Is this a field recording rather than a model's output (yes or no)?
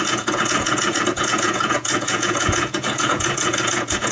no